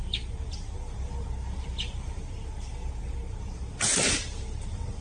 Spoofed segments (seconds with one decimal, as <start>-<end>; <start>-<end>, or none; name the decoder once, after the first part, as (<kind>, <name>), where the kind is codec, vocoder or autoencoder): none